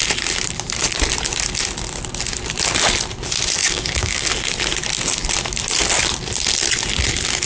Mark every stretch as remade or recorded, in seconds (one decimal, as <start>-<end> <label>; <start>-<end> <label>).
0.0-3.6 recorded; 3.6-4.3 remade; 4.3-7.5 recorded